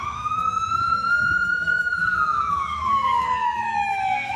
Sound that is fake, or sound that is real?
fake